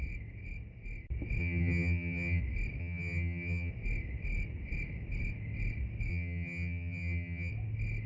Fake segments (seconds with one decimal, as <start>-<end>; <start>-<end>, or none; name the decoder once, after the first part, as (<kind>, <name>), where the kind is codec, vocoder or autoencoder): 1.4-2.4 (vocoder, HiFi-GAN); 2.8-3.7; 6.1-7.5